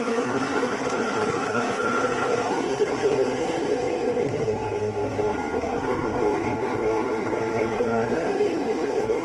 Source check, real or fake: fake